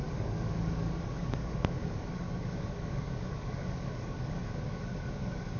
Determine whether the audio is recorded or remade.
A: remade